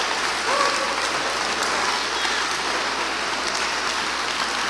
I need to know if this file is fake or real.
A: real